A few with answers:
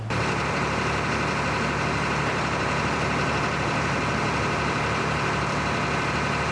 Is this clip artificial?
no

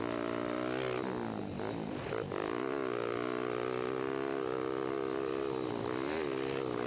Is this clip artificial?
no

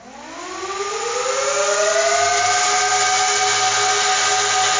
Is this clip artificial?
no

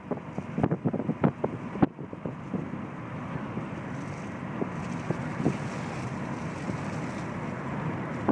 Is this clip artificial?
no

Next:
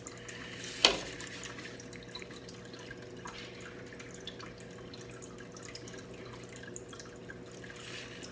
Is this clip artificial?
no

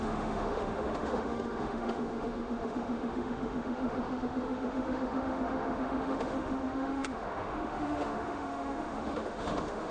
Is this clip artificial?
yes